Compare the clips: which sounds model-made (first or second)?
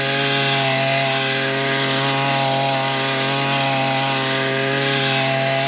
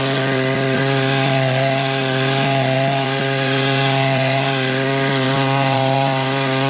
second